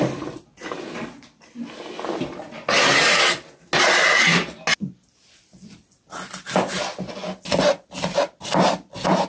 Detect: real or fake real